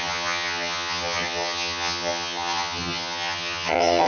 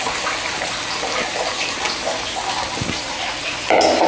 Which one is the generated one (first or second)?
first